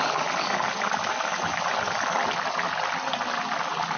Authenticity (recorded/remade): recorded